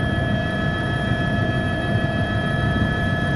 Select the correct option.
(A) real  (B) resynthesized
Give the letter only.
B